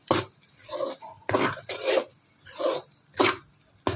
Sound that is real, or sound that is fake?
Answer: real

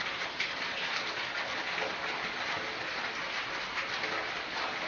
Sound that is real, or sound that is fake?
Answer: real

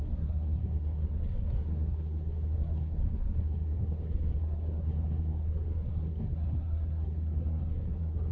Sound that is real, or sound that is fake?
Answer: fake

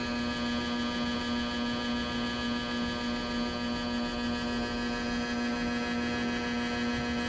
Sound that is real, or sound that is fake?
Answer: real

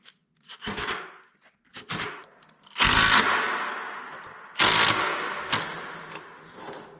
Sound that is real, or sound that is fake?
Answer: real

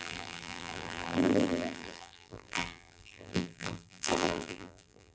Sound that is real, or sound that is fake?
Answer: fake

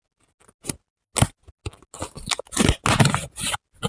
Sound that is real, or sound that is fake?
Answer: real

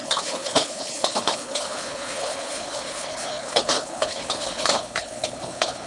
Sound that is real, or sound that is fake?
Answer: fake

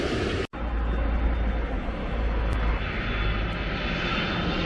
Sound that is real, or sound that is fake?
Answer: real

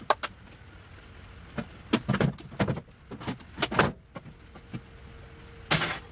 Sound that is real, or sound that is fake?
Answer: real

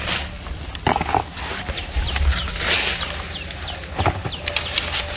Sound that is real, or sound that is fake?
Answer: real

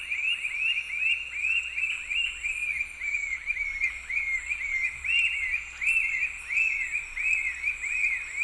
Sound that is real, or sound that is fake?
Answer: real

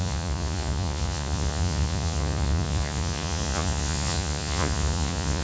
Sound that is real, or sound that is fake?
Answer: fake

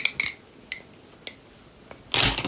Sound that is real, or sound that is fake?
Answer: real